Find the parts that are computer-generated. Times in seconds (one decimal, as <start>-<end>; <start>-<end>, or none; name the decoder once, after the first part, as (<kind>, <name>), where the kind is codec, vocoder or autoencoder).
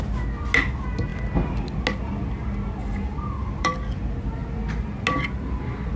2.8-3.7 (vocoder, BigVGAN v2)